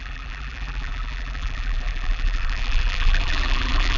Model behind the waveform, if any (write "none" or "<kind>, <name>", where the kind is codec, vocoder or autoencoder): vocoder, BigVGAN v2